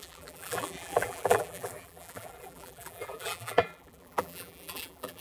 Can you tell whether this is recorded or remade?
remade